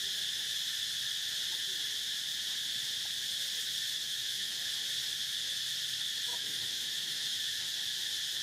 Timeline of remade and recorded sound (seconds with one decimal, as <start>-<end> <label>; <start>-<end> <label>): 0.0-4.0 recorded; 4.0-4.6 remade; 4.6-6.3 recorded; 6.3-7.6 remade; 7.6-8.4 recorded